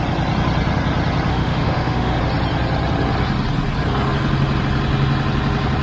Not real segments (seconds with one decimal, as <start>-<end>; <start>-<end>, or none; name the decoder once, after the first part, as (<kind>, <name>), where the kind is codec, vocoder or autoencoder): 1.3-2.2 (autoencoder, DAC-VAE)